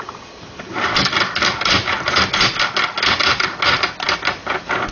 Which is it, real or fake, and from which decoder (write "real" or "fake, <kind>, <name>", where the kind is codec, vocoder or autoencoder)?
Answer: real